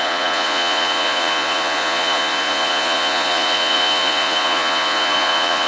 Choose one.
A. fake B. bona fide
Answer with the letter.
A